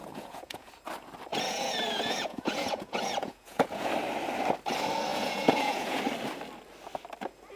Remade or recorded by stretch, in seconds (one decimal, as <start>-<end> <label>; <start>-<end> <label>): 0.0-0.7 remade; 0.7-1.3 recorded; 1.3-3.9 remade; 3.9-5.1 recorded; 5.1-6.0 remade; 6.0-7.6 recorded